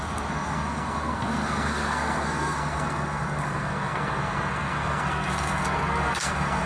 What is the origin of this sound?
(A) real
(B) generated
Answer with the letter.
B